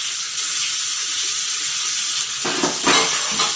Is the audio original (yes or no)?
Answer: yes